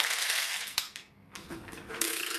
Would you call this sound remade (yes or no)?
yes